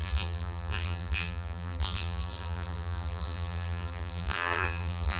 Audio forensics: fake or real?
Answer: fake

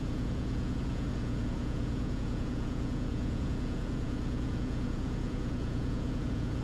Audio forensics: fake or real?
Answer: fake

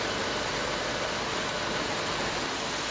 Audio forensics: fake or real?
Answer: real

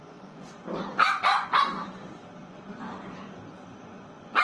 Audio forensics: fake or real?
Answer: fake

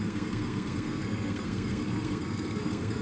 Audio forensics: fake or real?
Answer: fake